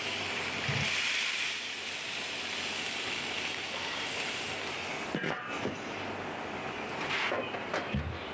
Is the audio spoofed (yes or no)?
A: no